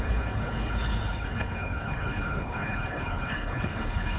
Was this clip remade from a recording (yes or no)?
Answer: yes